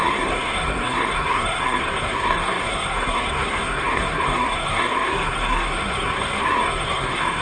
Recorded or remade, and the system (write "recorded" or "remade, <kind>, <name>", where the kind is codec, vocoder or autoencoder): remade, codec, SNAC